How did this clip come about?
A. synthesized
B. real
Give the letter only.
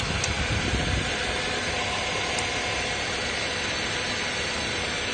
B